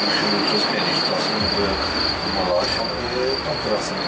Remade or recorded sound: recorded